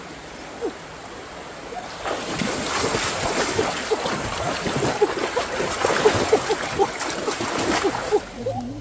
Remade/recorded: recorded